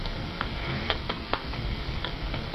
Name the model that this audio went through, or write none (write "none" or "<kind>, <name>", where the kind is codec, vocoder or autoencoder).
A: codec, SNAC